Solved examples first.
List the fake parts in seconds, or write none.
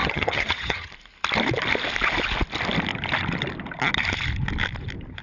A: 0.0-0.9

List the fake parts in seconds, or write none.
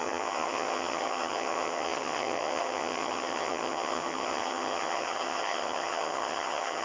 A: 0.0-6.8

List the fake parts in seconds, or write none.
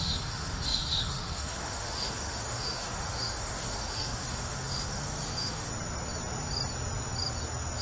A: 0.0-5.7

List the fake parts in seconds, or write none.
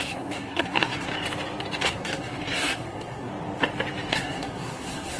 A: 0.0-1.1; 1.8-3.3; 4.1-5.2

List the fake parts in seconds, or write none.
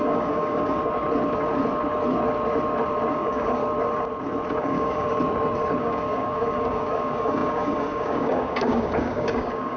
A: 0.0-0.8; 3.1-3.6; 4.6-5.1; 5.8-9.8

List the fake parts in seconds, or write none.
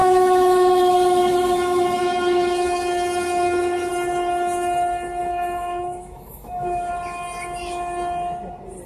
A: 0.0-3.9; 5.2-6.9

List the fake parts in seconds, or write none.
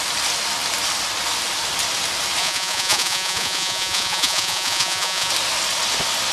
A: 2.4-5.3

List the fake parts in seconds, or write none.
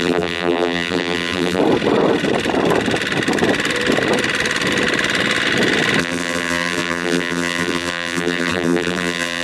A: 0.0-1.6; 6.0-9.4